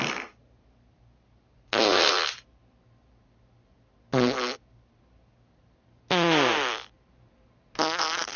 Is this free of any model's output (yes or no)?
yes